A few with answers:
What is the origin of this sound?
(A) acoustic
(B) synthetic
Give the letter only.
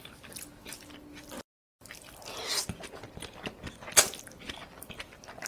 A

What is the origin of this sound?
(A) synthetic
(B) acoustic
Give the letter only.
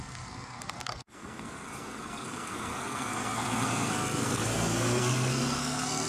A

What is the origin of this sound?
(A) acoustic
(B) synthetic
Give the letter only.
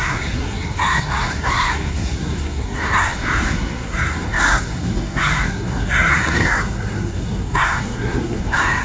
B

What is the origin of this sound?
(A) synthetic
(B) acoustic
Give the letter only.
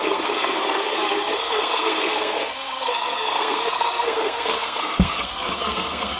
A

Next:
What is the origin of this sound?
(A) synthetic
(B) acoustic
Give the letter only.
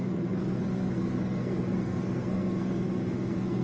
A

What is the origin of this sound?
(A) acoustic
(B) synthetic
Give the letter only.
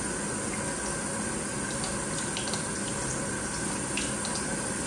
A